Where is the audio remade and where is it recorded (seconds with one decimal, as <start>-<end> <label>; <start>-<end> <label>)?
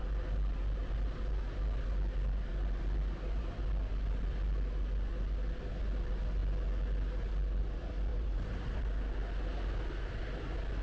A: 0.0-8.1 recorded; 8.1-8.8 remade; 8.8-10.8 recorded